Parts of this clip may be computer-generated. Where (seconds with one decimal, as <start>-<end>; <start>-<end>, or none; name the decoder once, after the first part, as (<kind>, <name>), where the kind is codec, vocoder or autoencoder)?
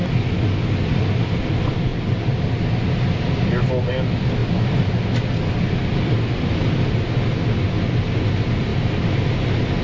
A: none